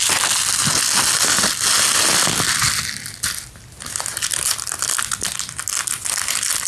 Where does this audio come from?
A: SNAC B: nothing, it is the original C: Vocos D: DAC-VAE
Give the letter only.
B